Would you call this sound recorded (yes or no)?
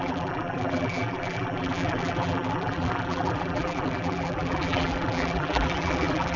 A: no